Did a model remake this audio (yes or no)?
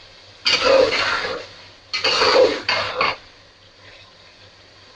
no